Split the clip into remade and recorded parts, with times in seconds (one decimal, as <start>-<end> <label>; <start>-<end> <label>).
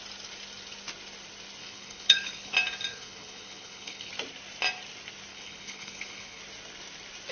0.0-1.6 recorded; 1.6-2.5 remade; 2.5-2.9 recorded; 2.9-4.1 remade; 4.1-5.3 recorded; 5.3-6.4 remade; 6.4-7.3 recorded